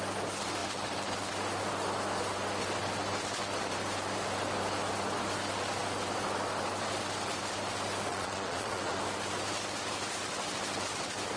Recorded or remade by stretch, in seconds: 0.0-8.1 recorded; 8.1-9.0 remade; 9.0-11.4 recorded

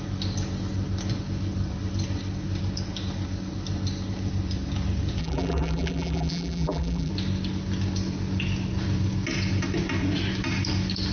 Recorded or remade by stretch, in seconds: 0.0-5.2 recorded; 5.2-7.1 remade; 7.1-11.1 recorded

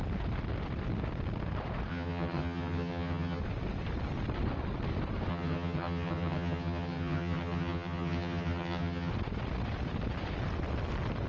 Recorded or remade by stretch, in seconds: 0.0-1.9 recorded; 1.9-3.4 remade; 3.4-5.3 recorded; 5.3-9.1 remade; 9.1-11.3 recorded

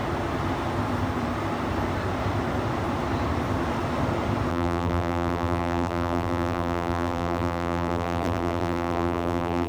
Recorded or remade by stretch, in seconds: 0.0-4.5 recorded; 4.5-9.7 remade

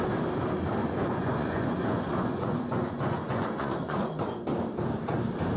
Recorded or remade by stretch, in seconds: 0.0-0.8 recorded; 0.8-4.2 remade; 4.2-5.6 recorded